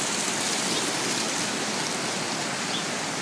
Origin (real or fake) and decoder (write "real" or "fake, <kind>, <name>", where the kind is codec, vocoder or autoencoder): real